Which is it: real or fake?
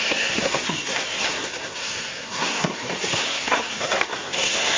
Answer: fake